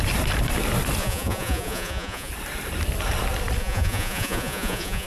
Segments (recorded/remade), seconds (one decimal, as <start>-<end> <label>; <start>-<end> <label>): 0.0-1.0 recorded; 1.0-2.3 remade; 2.3-3.6 recorded; 3.6-5.1 remade